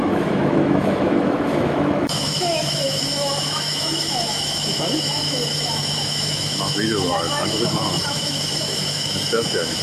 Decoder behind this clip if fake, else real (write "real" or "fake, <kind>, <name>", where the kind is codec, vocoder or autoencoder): fake, autoencoder, DAC-VAE